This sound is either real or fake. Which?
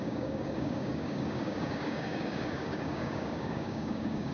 fake